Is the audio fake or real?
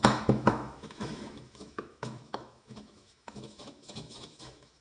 fake